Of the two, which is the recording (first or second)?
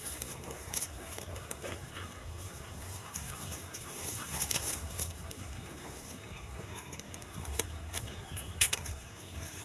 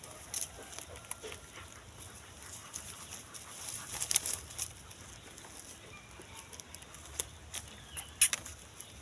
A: second